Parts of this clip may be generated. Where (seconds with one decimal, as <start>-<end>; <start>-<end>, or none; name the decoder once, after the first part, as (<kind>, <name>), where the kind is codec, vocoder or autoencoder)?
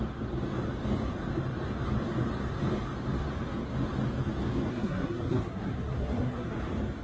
4.7-6.5 (codec, SNAC)